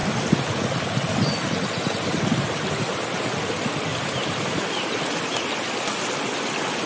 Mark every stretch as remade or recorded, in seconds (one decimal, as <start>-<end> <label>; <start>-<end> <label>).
0.0-3.9 recorded; 3.9-4.7 remade; 4.7-6.9 recorded